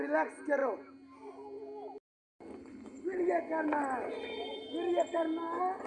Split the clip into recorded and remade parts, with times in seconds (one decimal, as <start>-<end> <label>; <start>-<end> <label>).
0.0-2.6 recorded; 2.6-3.3 remade; 3.3-5.9 recorded